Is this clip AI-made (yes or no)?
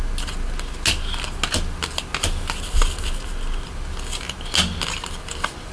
no